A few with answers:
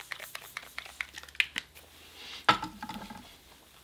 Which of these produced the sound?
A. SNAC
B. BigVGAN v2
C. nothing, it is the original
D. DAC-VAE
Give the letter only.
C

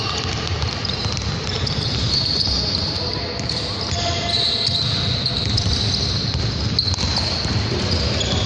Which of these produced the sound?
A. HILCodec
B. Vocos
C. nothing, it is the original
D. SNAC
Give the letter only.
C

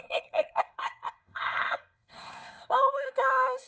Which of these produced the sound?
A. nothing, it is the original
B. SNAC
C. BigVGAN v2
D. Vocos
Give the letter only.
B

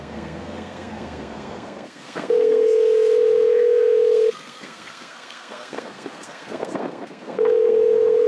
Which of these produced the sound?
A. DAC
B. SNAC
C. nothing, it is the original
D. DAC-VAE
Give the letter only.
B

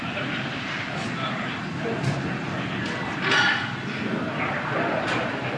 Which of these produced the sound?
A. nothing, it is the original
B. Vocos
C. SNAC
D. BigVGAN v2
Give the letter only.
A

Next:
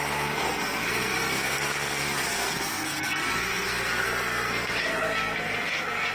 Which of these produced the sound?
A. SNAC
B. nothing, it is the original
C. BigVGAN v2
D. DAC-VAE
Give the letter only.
A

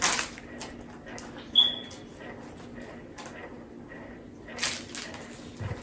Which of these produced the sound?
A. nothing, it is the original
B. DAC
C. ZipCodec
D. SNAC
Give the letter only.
A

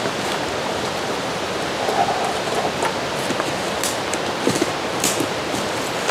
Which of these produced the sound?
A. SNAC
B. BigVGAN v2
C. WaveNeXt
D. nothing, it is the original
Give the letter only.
D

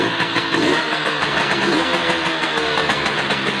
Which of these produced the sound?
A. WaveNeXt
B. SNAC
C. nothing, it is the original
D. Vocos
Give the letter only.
B